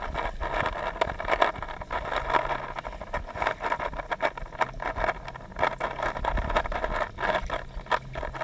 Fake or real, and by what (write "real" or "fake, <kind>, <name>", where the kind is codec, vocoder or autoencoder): real